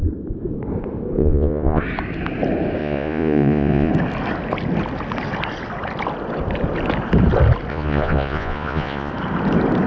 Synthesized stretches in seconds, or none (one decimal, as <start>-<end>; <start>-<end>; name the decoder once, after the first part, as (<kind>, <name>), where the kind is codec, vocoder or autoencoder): 1.2-1.8 (vocoder, Vocos); 2.8-3.9; 7.7-9.1

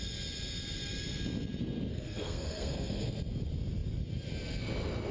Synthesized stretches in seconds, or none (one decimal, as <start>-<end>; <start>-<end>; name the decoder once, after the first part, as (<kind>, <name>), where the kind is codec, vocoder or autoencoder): 1.9-3.1 (codec, SNAC)